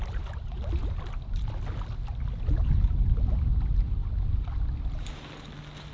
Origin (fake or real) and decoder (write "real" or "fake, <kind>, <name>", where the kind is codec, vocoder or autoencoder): real